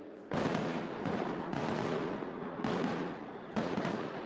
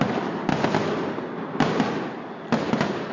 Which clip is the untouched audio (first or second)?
second